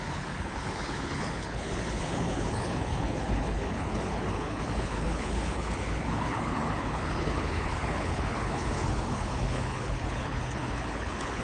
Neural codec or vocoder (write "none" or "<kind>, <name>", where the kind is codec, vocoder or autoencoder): codec, HILCodec